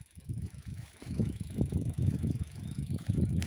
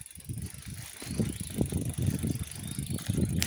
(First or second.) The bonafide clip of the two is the second